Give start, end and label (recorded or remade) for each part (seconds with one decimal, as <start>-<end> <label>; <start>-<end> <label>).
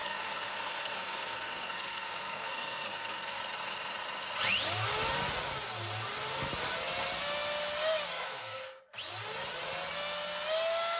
0.0-3.4 remade; 3.4-8.1 recorded; 8.1-8.8 remade; 8.8-11.0 recorded